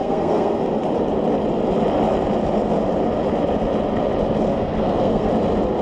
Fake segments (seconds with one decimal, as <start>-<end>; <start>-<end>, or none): 0.0-0.6; 4.5-5.3